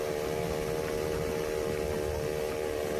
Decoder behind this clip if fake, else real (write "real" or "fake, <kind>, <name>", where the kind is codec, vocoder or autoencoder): real